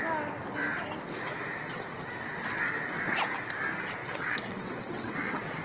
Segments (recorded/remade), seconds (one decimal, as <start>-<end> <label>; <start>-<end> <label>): 0.0-4.0 recorded; 4.0-5.6 remade